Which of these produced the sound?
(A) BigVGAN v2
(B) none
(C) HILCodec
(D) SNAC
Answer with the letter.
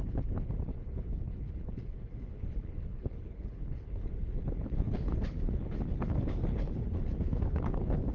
C